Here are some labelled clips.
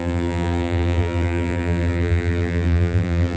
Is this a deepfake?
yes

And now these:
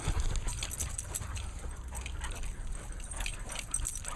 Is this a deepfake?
no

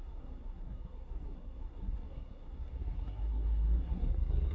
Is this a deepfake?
yes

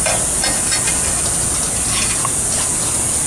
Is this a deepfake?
no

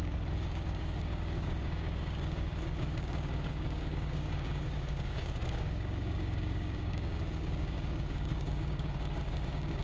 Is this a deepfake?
yes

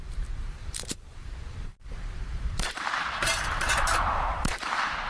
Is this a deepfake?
yes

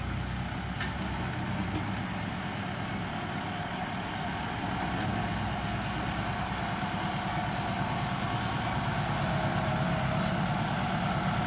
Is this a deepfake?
no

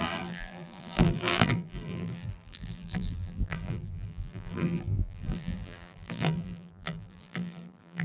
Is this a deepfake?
yes